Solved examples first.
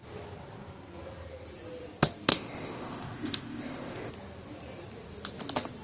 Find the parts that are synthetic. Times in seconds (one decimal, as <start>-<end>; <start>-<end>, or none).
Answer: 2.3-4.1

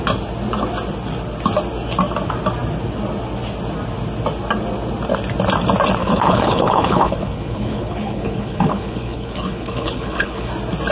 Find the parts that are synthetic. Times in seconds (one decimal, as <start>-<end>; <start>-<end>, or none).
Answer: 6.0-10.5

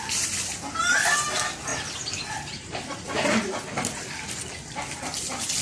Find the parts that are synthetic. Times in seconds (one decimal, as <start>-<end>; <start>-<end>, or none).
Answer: none

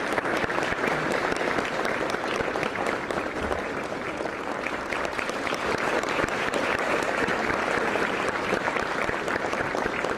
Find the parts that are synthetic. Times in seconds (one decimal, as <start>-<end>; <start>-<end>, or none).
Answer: 0.0-7.3; 7.8-10.2

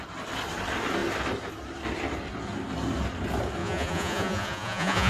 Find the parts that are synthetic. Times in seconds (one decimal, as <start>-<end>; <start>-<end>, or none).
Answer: 3.6-5.1

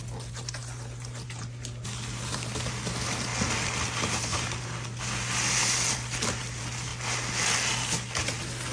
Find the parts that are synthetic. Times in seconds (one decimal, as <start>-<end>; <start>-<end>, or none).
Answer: none